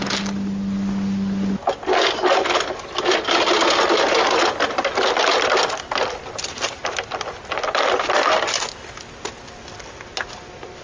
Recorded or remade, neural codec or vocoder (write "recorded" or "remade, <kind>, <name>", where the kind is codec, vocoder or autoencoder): recorded